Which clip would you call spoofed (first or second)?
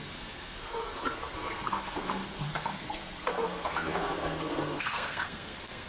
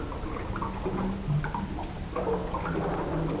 first